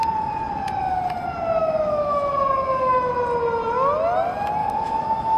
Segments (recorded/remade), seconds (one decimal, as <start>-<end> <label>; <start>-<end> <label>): 0.0-1.6 recorded; 1.6-3.1 remade; 3.1-4.6 recorded; 4.6-5.4 remade